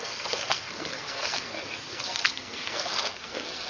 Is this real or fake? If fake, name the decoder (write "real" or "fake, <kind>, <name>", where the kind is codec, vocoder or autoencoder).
fake, codec, SNAC